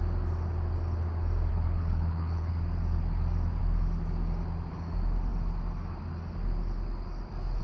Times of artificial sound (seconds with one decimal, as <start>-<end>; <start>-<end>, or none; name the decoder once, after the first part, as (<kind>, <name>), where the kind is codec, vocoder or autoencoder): 1.5-2.5 (codec, HILCodec)